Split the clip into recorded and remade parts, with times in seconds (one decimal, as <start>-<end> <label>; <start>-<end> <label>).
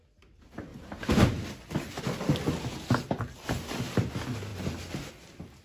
0.0-5.6 recorded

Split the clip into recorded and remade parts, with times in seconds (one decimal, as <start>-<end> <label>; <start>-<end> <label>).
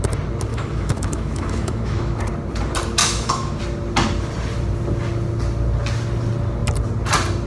0.0-0.5 recorded; 0.5-2.2 remade; 2.2-3.0 recorded; 3.0-3.6 remade; 3.6-7.5 recorded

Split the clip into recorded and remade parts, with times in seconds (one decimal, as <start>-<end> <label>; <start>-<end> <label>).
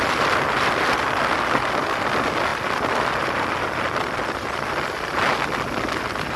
0.0-6.4 recorded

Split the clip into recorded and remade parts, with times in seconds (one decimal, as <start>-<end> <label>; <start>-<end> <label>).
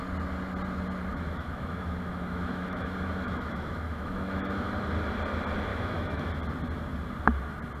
0.0-1.1 recorded; 1.1-4.7 remade; 4.7-5.7 recorded; 5.7-6.3 remade; 6.3-7.8 recorded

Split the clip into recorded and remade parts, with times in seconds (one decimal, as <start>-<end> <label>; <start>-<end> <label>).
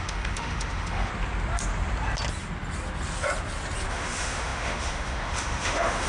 0.0-1.1 remade; 1.1-3.9 recorded; 3.9-6.1 remade